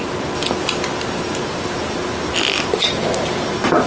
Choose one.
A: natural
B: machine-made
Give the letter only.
A